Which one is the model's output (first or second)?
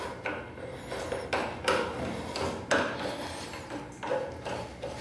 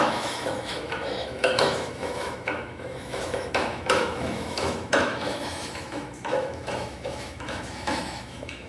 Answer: second